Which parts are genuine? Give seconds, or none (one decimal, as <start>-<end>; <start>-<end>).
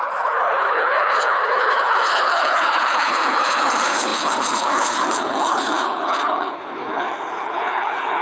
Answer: none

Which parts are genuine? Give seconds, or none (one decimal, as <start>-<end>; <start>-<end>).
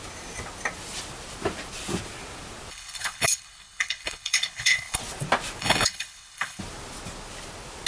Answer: 0.0-2.7; 5.0-5.6; 6.6-7.9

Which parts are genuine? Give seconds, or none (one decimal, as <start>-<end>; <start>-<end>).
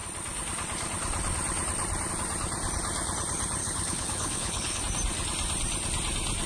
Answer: 0.0-3.6; 4.8-6.5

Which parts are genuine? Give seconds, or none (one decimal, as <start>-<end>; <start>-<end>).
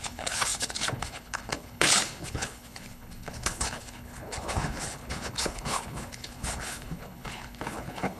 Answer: none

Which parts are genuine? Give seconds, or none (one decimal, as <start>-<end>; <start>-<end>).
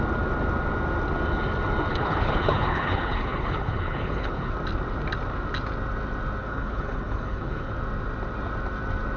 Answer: 0.0-1.9; 4.5-6.4; 7.7-9.2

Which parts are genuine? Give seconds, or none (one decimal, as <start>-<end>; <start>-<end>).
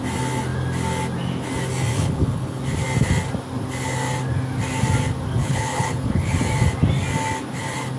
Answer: 0.0-1.9; 2.6-5.4; 6.4-8.0